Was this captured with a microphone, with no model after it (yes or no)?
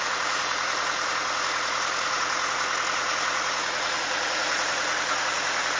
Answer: no